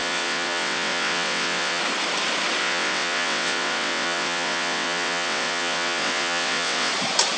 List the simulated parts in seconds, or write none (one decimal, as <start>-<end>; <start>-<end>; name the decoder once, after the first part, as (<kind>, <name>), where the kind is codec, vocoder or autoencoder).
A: 0.0-1.8 (vocoder, WaveNeXt); 2.6-6.9